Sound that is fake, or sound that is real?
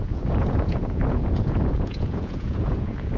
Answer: fake